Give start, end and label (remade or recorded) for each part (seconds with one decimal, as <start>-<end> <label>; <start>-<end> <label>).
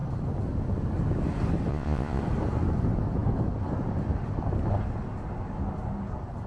0.0-1.7 recorded; 1.7-2.2 remade; 2.2-6.5 recorded